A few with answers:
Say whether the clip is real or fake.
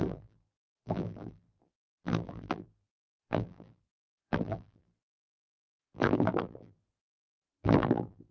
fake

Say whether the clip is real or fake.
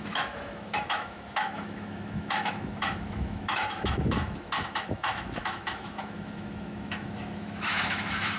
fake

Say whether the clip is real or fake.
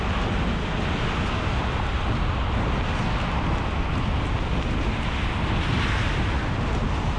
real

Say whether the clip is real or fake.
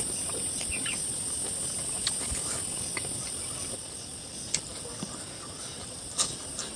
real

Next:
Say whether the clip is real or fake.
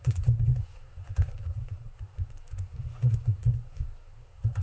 fake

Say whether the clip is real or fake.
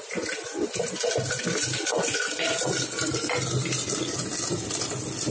real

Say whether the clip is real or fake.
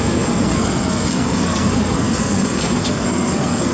fake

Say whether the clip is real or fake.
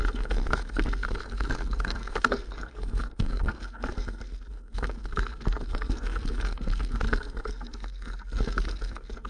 fake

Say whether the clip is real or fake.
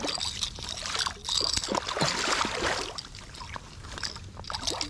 real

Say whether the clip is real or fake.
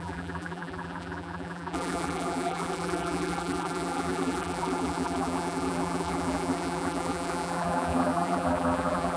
fake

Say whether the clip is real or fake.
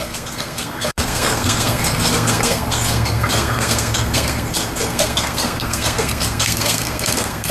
fake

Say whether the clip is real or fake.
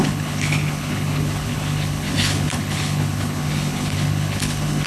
fake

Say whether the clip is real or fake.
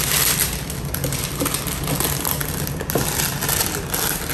real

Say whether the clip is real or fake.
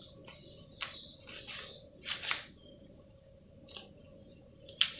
real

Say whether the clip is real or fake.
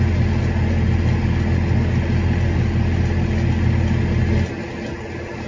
real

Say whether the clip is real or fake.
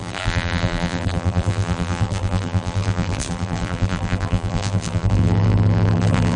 fake